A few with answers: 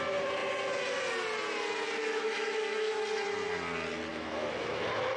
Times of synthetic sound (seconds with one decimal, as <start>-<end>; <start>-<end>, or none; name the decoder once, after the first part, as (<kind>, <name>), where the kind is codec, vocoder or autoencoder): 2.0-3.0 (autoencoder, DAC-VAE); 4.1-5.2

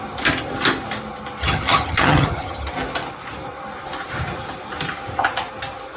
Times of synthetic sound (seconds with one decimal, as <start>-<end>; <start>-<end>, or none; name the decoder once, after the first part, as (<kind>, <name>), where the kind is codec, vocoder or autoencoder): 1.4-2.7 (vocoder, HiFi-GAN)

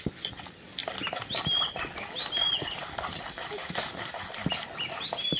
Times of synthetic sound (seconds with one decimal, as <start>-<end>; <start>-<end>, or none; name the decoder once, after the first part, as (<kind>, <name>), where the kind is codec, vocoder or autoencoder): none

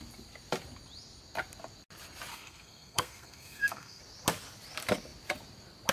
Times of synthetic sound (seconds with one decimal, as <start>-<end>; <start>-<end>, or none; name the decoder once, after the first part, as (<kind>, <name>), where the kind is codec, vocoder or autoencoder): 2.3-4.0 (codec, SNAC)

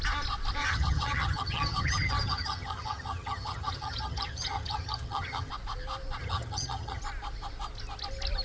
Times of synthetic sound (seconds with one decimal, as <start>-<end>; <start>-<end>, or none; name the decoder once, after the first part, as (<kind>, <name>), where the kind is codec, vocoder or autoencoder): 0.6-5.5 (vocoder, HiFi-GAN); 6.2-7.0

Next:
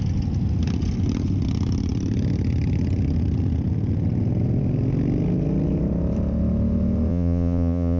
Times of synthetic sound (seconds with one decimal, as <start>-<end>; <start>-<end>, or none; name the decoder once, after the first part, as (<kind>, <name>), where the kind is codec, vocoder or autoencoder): 7.1-8.0 (vocoder, Vocos)

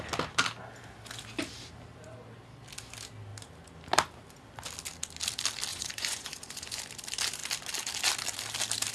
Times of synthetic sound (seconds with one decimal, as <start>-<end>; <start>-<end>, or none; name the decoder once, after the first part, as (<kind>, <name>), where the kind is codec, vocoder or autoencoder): 5.7-6.8 (vocoder, Vocos)

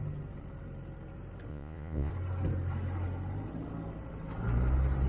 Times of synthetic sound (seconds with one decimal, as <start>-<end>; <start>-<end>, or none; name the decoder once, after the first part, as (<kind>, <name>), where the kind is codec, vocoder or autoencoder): 1.5-2.1 (vocoder, Vocos)